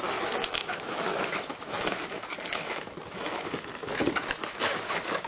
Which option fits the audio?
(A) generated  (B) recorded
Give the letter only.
A